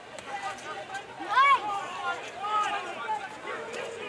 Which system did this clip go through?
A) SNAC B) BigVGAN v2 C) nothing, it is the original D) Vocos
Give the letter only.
C